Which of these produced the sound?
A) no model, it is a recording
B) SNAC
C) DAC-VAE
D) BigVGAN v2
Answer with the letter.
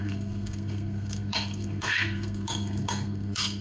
B